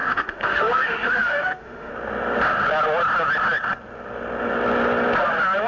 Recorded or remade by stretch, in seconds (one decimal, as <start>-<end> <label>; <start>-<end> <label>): 0.0-1.9 remade; 1.9-5.7 recorded